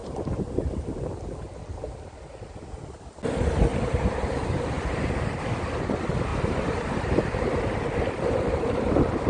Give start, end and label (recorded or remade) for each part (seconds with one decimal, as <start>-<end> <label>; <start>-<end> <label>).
0.0-3.7 recorded; 3.7-5.4 remade; 5.4-6.3 recorded; 6.3-7.4 remade; 7.4-9.3 recorded